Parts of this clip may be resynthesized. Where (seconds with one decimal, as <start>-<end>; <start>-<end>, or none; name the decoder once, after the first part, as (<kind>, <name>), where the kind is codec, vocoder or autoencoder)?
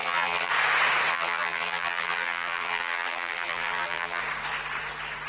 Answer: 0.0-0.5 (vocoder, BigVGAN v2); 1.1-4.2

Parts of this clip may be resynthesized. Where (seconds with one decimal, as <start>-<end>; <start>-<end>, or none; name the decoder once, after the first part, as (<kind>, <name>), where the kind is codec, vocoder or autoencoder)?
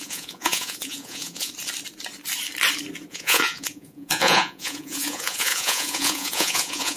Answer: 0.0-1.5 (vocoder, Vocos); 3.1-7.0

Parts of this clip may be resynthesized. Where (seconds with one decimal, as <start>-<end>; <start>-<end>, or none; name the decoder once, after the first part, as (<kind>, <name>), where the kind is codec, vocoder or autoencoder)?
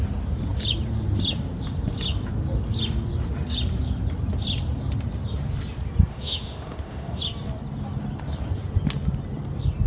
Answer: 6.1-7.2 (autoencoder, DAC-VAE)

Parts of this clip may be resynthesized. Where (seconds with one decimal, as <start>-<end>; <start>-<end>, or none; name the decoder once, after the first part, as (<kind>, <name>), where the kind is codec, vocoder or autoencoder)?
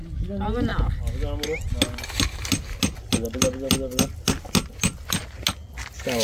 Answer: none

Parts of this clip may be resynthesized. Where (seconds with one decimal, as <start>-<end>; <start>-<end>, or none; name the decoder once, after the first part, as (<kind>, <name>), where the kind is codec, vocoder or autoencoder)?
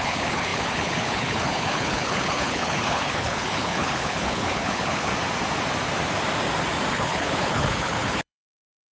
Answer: 0.0-5.1 (codec, HILCodec); 6.9-8.9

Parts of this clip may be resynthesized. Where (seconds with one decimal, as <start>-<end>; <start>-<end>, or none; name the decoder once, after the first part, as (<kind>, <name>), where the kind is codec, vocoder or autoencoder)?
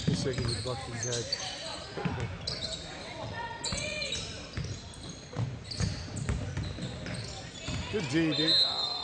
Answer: 3.0-4.1 (vocoder, WaveNeXt)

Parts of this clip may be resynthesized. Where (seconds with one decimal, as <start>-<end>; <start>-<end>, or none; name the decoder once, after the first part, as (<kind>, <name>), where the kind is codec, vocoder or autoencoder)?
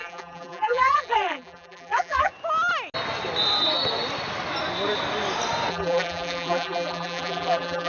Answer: 0.0-2.3 (vocoder, BigVGAN v2); 5.7-7.9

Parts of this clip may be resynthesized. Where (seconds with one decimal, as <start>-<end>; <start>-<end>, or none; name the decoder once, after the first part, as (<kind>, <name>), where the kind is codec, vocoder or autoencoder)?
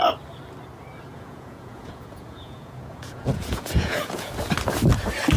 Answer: 1.1-4.3 (vocoder, Vocos)